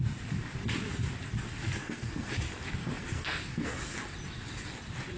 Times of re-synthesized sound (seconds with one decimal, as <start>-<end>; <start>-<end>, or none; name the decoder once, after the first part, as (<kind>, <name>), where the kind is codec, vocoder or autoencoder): 1.8-2.3 (codec, SNAC); 2.8-3.8